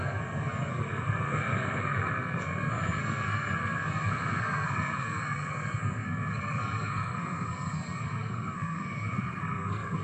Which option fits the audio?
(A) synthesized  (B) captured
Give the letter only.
A